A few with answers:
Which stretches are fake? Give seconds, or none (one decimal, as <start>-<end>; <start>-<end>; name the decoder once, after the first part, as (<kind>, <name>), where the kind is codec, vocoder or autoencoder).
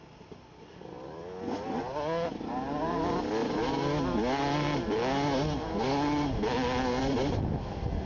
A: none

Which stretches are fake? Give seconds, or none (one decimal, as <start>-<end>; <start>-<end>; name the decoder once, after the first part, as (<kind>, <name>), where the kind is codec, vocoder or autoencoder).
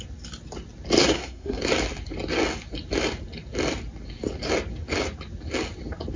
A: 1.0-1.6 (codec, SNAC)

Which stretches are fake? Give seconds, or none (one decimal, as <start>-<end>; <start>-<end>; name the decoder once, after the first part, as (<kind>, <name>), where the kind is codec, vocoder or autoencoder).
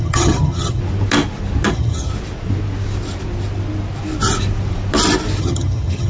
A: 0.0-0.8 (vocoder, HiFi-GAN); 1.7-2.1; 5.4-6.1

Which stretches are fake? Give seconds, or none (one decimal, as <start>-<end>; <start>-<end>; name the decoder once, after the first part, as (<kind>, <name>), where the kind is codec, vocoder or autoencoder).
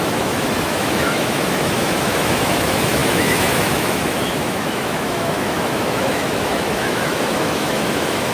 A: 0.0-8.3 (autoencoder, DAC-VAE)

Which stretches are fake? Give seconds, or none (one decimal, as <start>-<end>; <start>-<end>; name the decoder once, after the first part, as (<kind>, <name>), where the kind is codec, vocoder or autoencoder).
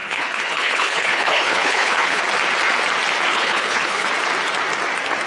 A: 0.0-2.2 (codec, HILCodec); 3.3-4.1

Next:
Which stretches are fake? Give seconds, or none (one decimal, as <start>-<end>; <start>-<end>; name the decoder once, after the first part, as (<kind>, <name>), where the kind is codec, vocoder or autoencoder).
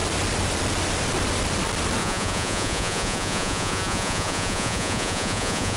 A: 2.0-5.8 (vocoder, Vocos)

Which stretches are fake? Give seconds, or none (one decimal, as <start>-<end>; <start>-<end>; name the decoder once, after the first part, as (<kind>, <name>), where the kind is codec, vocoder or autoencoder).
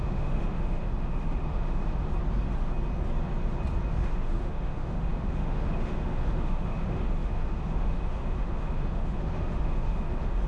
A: 0.0-2.1 (autoencoder, DAC-VAE); 3.9-10.5